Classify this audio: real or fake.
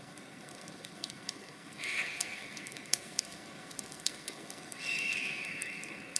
fake